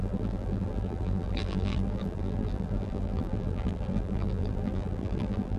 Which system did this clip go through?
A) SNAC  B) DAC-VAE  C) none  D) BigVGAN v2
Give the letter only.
D